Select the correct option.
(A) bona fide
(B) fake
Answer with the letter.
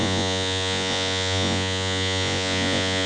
B